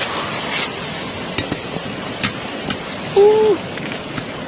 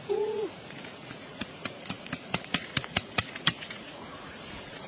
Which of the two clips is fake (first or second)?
second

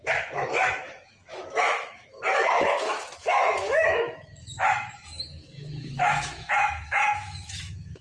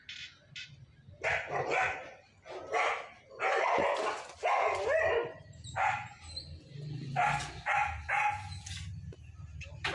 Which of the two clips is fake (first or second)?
first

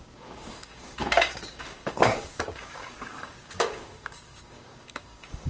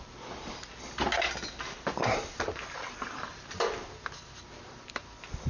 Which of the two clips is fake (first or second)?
first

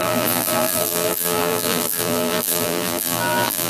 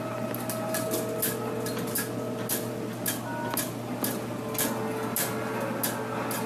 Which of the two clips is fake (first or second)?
first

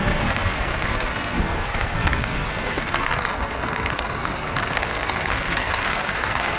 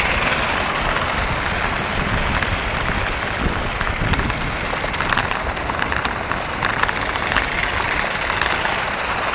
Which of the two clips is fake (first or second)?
first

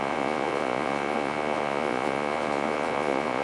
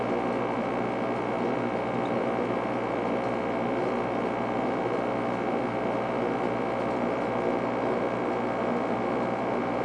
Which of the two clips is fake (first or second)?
first